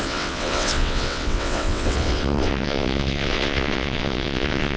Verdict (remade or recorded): remade